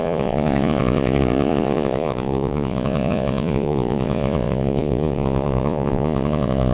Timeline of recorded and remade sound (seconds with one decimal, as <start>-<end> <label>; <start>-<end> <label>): 0.0-6.7 remade

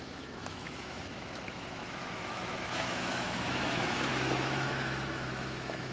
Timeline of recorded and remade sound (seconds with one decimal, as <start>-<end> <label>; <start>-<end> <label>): 0.0-5.9 remade